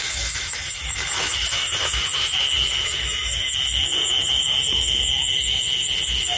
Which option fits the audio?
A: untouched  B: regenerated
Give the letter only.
B